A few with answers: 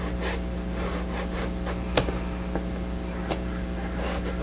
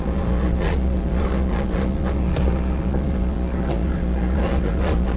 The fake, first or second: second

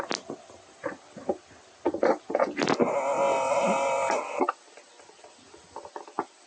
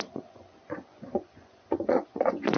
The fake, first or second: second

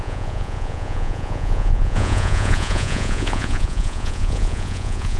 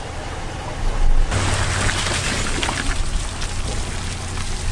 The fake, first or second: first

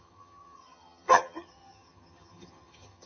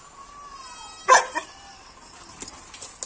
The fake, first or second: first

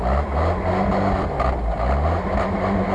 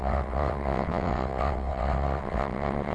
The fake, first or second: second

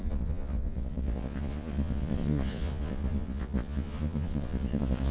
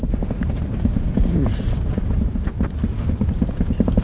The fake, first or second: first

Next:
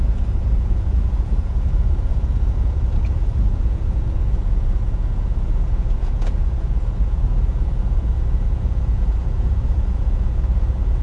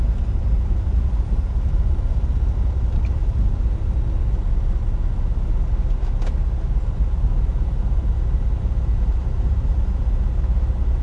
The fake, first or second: first